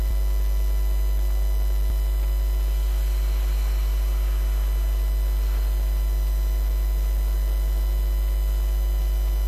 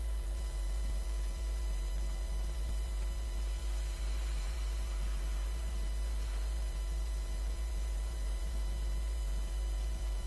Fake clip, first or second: second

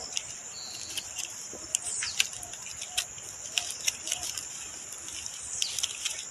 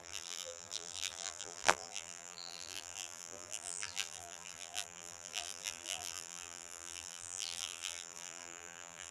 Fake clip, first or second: second